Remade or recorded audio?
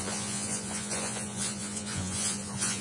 remade